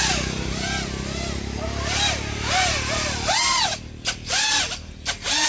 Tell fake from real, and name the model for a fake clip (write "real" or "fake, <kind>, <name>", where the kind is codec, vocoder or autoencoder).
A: real